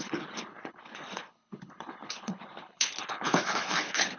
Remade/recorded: remade